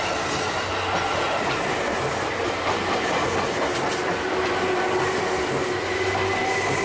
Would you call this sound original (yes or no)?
yes